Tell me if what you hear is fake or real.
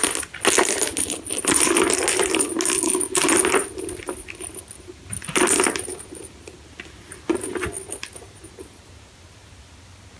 real